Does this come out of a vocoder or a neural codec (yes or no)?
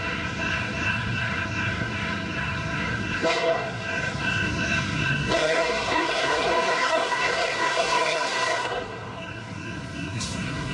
yes